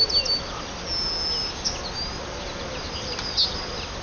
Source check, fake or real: real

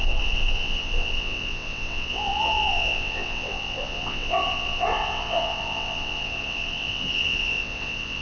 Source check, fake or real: fake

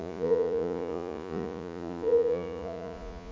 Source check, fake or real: fake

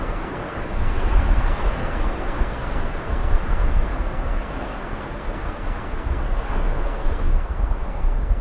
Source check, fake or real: fake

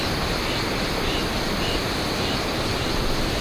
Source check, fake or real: real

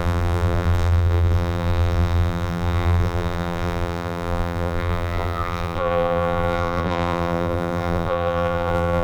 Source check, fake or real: fake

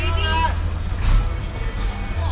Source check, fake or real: real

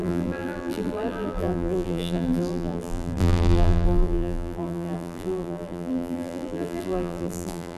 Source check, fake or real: fake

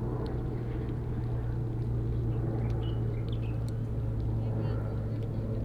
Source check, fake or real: real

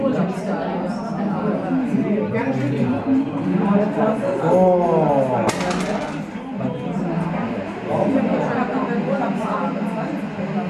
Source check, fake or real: real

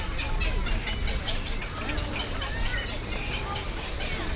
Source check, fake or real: real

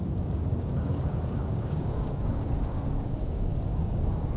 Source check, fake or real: fake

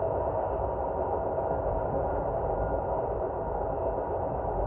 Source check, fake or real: real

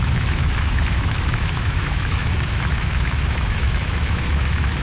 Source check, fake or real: fake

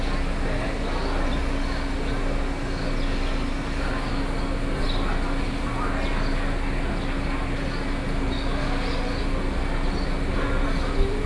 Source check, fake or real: real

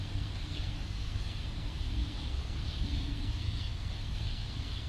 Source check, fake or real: fake